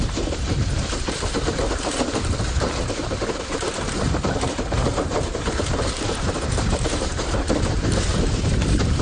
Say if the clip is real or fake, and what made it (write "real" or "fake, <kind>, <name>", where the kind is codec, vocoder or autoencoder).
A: fake, vocoder, BigVGAN v2